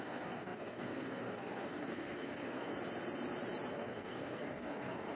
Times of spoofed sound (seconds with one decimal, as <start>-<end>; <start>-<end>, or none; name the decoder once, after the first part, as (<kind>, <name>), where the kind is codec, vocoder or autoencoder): 0.0-2.7 (codec, SNAC); 3.7-5.2